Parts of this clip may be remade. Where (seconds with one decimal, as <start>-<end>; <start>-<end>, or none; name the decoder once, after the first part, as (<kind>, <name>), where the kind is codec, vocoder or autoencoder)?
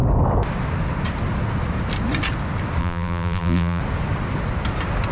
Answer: 2.8-3.8 (vocoder, BigVGAN v2)